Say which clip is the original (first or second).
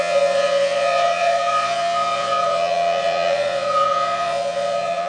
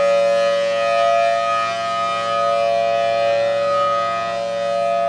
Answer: second